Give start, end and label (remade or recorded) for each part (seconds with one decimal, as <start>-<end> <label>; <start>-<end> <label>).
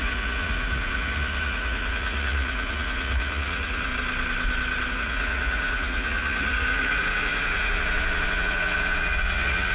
0.0-3.9 remade; 3.9-4.9 recorded; 4.9-9.7 remade